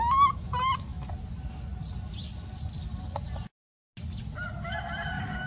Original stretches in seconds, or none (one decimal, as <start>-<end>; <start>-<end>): 0.0-5.5